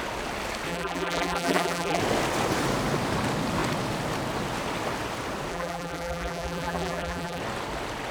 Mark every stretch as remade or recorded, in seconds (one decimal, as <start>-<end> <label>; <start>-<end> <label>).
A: 0.0-0.7 recorded; 0.7-2.0 remade; 2.0-5.5 recorded; 5.5-7.4 remade; 7.4-8.1 recorded